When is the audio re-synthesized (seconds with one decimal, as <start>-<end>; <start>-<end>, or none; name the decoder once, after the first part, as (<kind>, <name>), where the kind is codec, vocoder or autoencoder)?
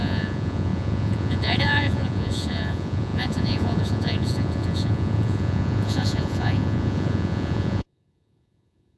0.0-9.0 (vocoder, Vocos)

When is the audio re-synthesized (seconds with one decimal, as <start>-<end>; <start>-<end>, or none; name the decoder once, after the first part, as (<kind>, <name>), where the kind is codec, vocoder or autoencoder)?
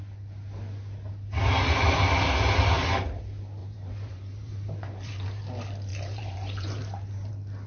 3.6-5.4 (vocoder, BigVGAN v2); 5.9-7.3